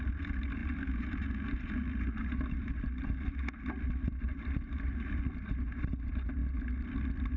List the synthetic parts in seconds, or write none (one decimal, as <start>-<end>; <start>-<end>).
0.0-6.4